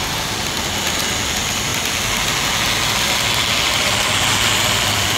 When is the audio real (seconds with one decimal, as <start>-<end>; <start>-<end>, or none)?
0.0-5.2